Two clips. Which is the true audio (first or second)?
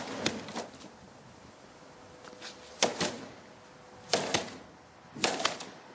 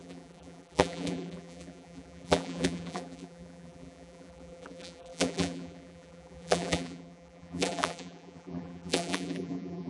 first